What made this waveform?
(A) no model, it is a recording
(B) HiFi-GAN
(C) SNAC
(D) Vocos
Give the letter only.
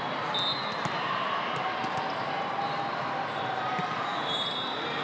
A